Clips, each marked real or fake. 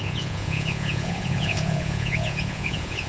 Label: fake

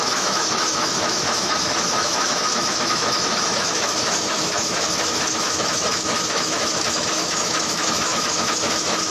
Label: fake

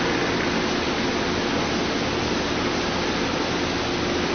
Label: real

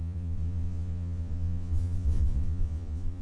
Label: fake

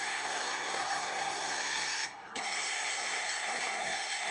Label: fake